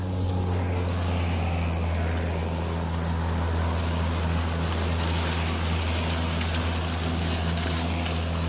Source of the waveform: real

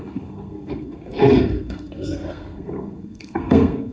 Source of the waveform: fake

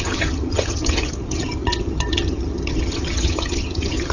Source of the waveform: fake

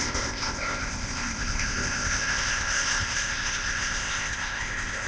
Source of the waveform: fake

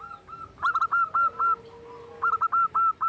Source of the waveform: real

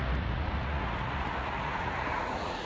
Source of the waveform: fake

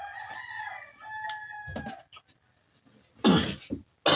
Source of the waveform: real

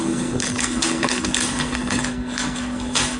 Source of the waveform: fake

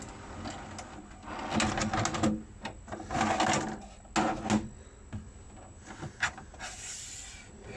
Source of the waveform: real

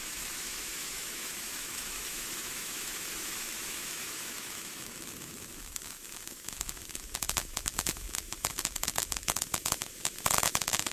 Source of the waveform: fake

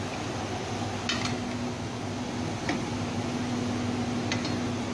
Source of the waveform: real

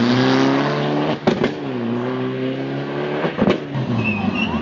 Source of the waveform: real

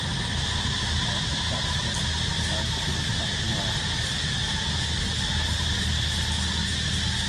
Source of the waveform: real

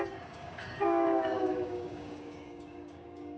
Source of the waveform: fake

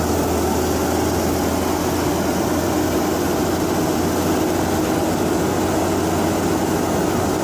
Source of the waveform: real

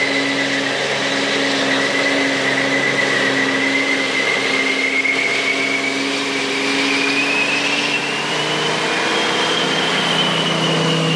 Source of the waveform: real